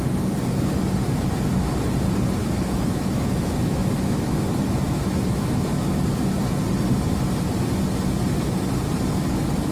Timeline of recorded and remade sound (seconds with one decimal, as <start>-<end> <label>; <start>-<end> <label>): 0.0-2.4 recorded; 2.4-6.0 remade; 6.0-9.7 recorded